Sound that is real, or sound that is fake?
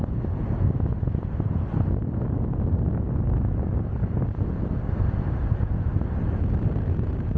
real